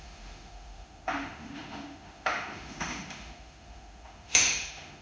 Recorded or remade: remade